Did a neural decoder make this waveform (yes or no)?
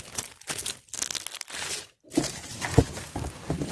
no